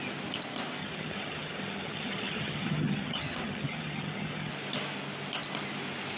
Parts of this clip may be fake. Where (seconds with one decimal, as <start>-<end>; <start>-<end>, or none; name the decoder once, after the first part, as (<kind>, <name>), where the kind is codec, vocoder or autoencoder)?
0.8-4.5 (vocoder, HiFi-GAN)